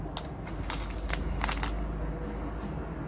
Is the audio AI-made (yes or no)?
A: no